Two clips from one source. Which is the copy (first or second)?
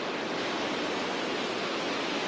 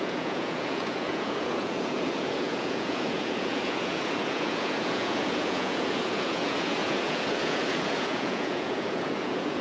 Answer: second